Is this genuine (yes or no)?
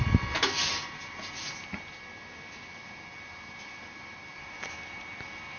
yes